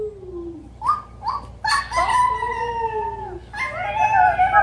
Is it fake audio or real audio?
real